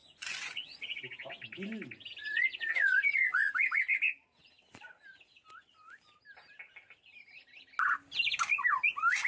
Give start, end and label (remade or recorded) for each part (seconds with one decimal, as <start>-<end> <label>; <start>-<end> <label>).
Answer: 0.0-0.8 remade; 0.8-2.2 recorded; 2.2-3.5 remade; 3.5-9.3 recorded